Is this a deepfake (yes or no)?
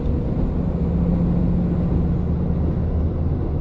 no